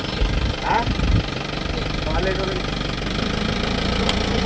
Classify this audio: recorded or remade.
recorded